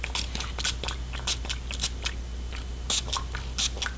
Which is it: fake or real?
real